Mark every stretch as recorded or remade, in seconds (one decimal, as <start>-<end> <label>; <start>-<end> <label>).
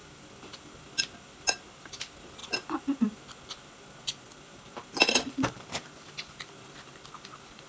0.0-0.8 remade; 0.8-2.4 recorded; 2.4-6.9 remade; 6.9-7.7 recorded